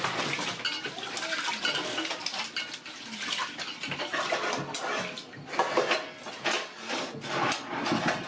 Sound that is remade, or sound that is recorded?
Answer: recorded